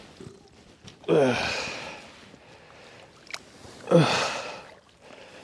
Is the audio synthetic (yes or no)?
no